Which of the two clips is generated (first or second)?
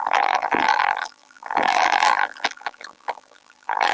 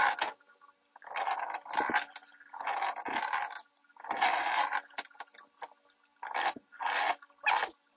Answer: first